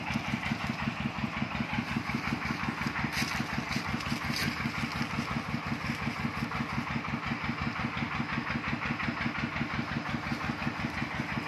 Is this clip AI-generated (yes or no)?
no